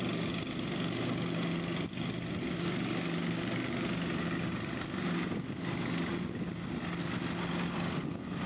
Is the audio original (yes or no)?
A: yes